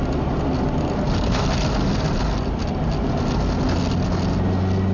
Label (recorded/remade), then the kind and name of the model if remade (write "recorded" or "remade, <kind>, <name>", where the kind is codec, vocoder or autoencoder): recorded